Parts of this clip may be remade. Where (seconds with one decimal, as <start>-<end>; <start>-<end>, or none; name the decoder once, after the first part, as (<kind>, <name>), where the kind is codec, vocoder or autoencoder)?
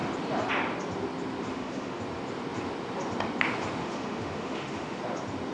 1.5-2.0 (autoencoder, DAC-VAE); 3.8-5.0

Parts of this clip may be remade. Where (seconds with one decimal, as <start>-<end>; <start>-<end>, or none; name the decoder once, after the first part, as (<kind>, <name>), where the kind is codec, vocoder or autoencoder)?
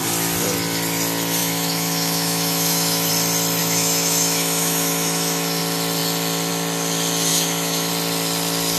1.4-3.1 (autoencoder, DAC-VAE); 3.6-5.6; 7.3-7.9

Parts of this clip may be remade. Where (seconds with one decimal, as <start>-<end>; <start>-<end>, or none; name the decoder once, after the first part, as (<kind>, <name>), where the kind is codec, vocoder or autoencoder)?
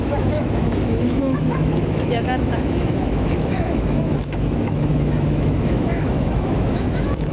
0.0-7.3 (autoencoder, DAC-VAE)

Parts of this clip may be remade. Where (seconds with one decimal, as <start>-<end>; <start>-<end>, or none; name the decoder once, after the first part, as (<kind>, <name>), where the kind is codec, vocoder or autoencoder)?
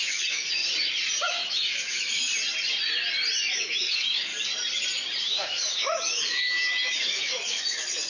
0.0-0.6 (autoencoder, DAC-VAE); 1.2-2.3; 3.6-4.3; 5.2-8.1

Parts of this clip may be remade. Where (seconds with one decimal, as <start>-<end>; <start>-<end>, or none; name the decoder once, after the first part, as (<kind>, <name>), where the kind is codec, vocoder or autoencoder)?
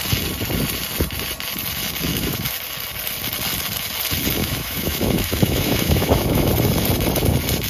2.1-2.6 (autoencoder, DAC-VAE); 4.4-6.5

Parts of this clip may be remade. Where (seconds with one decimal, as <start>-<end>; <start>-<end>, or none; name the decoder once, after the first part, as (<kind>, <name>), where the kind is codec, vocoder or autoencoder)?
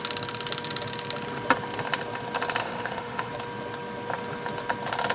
2.6-3.3 (autoencoder, DAC-VAE)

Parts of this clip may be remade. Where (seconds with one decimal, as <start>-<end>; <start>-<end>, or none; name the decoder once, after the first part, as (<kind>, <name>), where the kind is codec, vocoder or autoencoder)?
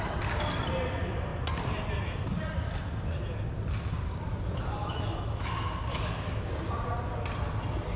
4.8-5.5 (autoencoder, DAC-VAE); 5.9-6.5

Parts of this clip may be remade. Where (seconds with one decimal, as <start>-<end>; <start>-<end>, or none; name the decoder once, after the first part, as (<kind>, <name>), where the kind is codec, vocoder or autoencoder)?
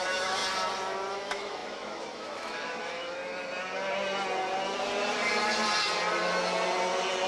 0.0-0.4 (autoencoder, DAC-VAE); 1.1-3.2